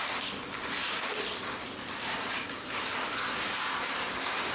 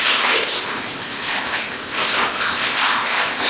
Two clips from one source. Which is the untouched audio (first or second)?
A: first